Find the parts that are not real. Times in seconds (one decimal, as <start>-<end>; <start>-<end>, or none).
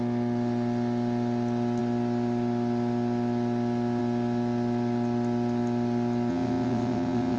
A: 6.3-7.4